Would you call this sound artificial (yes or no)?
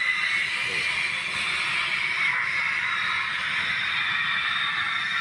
no